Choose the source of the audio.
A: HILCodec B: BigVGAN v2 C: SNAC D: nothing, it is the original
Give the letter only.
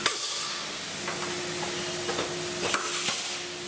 D